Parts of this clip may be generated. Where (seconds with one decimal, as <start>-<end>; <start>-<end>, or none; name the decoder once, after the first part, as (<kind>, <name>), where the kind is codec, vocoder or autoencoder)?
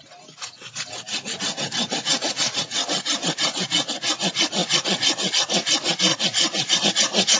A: 4.6-5.3 (vocoder, Vocos); 6.1-6.8